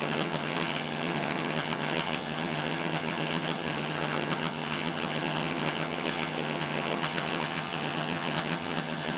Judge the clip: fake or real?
fake